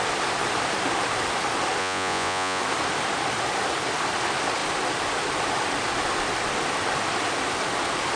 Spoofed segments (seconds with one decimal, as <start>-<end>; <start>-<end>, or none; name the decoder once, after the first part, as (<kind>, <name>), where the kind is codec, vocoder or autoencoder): 1.8-2.6 (vocoder, Vocos)

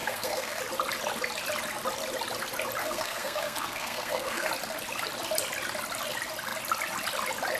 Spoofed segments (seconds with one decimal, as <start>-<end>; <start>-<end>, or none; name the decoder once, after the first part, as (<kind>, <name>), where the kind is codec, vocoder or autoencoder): 0.0-0.6 (codec, SNAC); 2.8-4.5

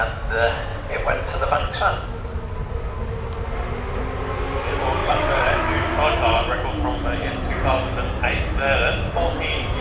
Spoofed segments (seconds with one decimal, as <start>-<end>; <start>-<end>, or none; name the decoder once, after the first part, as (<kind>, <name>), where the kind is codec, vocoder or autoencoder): 0.7-1.8 (vocoder, WaveNeXt); 5.0-5.6

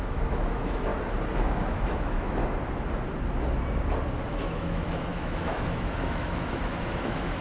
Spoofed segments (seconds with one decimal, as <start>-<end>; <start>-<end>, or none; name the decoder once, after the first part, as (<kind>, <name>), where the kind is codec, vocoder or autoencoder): 0.0-0.9 (autoencoder, DAC-VAE); 1.5-2.4; 4.3-7.4

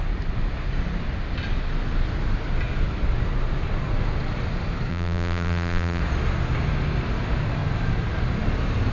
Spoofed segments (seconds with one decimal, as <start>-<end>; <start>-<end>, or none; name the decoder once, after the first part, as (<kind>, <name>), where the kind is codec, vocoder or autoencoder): 4.9-6.0 (vocoder, BigVGAN v2)

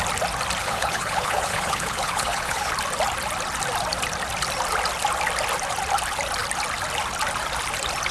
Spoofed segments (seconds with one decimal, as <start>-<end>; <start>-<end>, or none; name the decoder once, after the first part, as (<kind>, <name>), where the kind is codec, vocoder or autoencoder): 0.6-2.7 (codec, HILCodec)

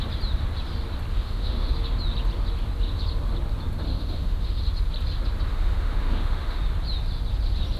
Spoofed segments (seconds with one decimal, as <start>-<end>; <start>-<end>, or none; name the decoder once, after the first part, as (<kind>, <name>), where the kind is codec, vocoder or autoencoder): 1.1-1.7 (autoencoder, DAC-VAE); 3.9-4.6; 5.5-6.6